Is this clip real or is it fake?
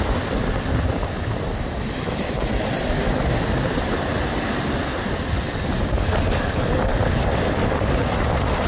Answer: real